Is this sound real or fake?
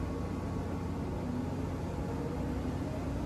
real